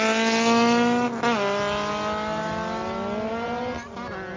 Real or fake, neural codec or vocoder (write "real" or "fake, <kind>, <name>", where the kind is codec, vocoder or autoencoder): real